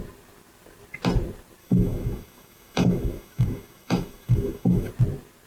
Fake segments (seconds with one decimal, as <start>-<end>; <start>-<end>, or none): 1.6-4.9

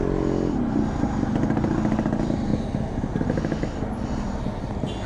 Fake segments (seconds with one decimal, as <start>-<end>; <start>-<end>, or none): none

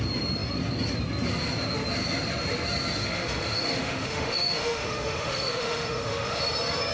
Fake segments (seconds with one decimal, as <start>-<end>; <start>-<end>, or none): 3.0-6.4

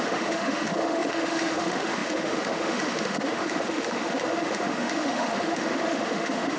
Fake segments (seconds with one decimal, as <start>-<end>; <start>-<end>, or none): 0.0-6.6

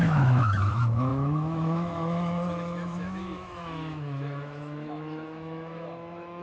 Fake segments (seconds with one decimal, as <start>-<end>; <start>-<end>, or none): 0.0-6.4

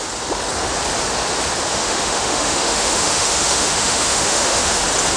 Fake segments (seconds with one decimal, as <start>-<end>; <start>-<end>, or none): 1.7-4.8

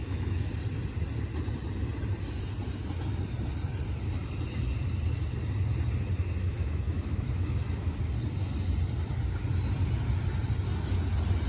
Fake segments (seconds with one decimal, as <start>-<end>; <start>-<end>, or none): 0.0-0.5; 6.4-8.0

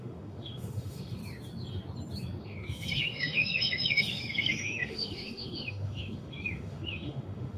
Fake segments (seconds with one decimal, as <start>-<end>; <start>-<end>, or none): 0.0-1.2; 2.4-7.6